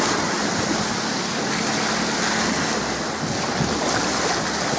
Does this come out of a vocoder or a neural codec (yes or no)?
no